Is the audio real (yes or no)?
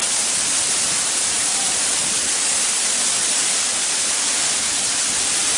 yes